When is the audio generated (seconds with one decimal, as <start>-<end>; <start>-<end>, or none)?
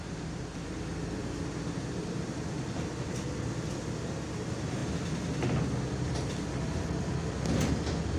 1.2-2.5